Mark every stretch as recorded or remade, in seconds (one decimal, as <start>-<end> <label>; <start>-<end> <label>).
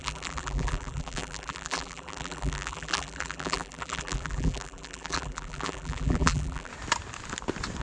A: 0.0-6.7 remade; 6.7-7.8 recorded